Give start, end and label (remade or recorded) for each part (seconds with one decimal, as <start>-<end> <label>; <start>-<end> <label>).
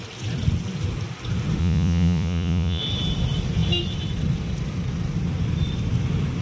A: 0.0-1.6 recorded; 1.6-2.8 remade; 2.8-6.4 recorded